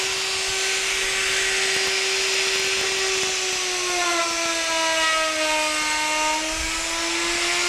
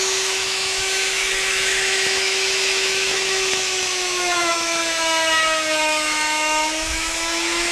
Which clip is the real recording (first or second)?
first